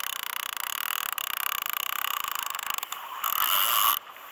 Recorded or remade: recorded